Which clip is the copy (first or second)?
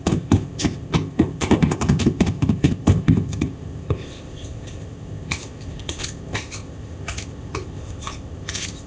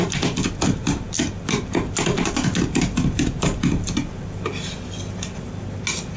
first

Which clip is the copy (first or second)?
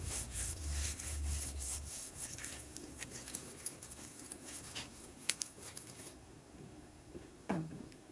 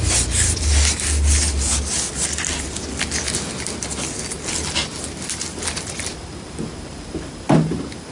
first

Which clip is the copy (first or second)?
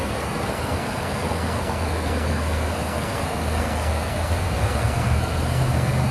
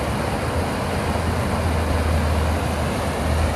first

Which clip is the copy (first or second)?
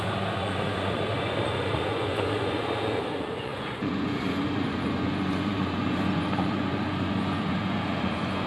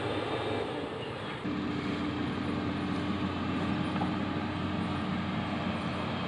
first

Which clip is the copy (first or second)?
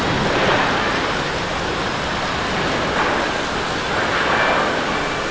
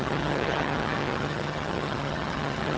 second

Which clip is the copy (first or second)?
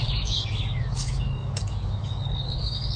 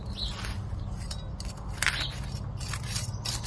first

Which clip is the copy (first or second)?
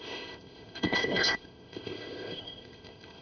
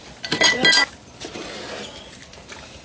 first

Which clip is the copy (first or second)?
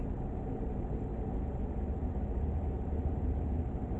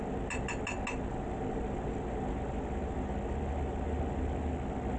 first